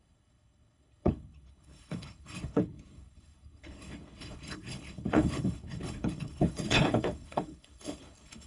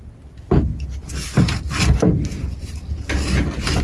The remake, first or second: first